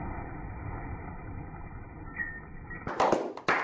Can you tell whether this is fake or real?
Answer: real